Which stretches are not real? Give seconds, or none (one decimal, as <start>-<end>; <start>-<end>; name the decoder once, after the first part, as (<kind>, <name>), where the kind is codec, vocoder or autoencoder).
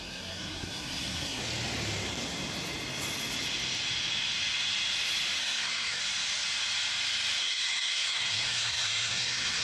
0.0-1.4 (codec, SNAC); 5.4-6.0; 7.4-9.6